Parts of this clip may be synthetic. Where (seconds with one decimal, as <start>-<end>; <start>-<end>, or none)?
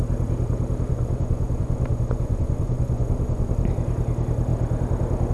0.9-3.5